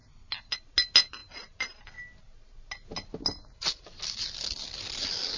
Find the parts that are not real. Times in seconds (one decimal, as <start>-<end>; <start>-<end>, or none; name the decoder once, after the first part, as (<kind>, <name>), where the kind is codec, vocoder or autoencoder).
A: none